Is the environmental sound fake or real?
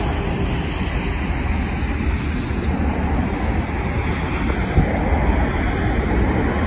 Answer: real